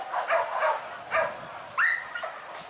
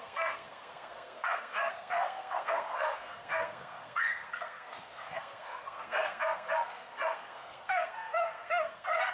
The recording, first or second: first